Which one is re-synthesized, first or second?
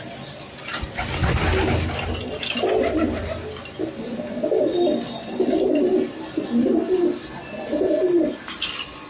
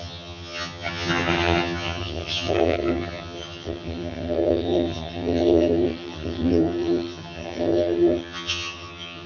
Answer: second